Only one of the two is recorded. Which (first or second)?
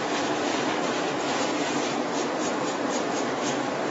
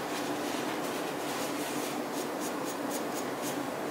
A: second